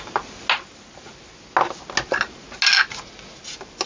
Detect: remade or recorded recorded